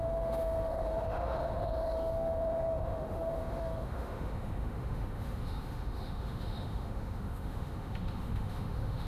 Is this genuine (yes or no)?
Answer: no